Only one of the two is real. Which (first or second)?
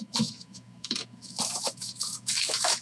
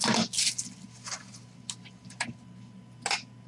second